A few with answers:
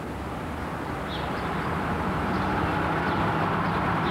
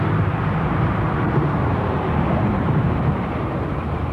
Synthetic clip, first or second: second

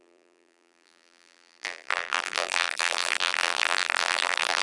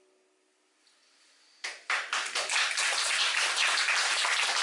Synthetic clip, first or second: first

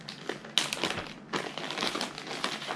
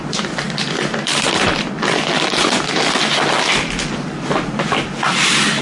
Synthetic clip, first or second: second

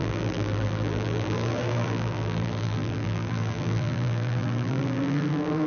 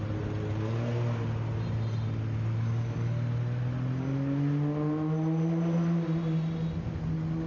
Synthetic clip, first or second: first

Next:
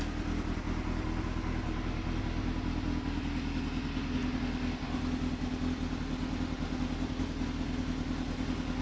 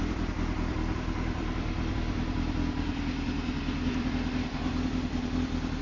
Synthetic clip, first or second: second